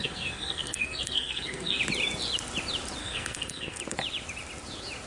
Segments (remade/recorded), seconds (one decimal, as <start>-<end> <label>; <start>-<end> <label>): 0.0-1.8 remade; 1.8-3.0 recorded; 3.0-3.8 remade; 3.8-5.1 recorded